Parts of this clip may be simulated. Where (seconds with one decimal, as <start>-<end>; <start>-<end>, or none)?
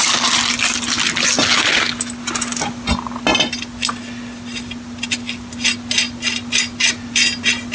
none